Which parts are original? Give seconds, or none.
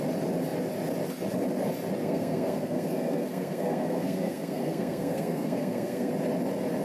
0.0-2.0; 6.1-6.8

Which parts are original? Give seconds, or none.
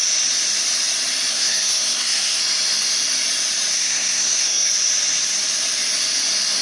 0.0-1.3; 2.4-3.7; 4.7-6.6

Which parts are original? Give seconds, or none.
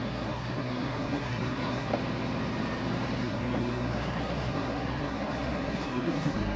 1.9-3.2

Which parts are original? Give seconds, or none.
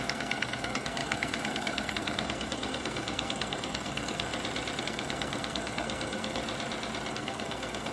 4.3-4.8; 6.4-7.1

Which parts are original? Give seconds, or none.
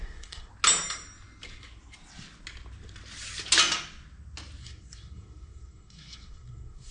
0.5-4.6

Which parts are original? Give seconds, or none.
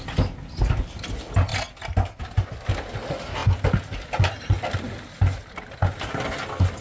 0.0-6.8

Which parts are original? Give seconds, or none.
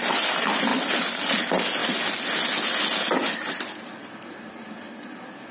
0.0-5.5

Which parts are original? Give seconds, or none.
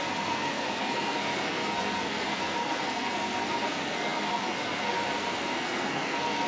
none